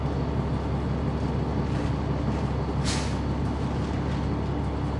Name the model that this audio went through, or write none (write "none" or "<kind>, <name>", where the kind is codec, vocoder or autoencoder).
none